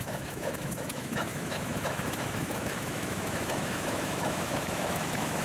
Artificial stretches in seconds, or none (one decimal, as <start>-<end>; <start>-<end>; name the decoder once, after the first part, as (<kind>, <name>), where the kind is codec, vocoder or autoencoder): 0.0-5.4 (autoencoder, DAC-VAE)